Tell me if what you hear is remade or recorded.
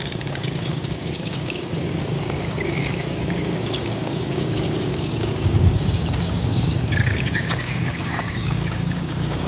remade